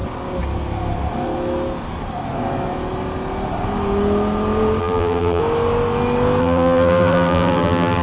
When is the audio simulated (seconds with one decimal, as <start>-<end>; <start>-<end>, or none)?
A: 4.8-5.4; 6.4-8.0